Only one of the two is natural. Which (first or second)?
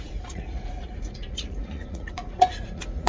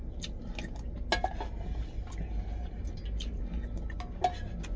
second